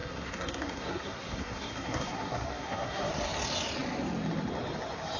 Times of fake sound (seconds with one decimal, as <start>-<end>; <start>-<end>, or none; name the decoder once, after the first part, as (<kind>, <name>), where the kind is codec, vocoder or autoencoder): 0.0-3.1 (codec, SNAC)